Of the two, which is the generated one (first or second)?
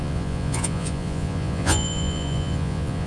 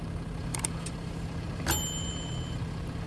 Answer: first